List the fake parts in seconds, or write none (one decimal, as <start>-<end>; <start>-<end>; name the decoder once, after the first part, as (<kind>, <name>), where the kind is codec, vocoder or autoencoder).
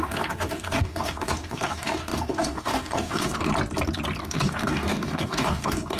0.0-3.5 (codec, DAC); 4.2-6.0